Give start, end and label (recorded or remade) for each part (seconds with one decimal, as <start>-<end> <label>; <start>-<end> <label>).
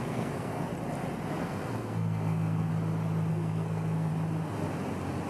0.0-0.7 remade; 0.7-1.4 recorded; 1.4-2.7 remade; 2.7-3.3 recorded; 3.3-4.1 remade; 4.1-5.3 recorded